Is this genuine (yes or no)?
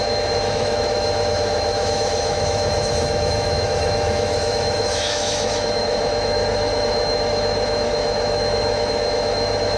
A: no